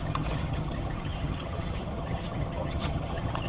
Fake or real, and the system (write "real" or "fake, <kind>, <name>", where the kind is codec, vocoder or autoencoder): fake, vocoder, HiFi-GAN